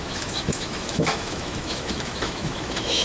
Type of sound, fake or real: fake